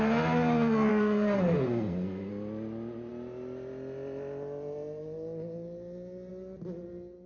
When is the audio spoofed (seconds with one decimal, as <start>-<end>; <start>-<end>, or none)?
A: 0.9-2.3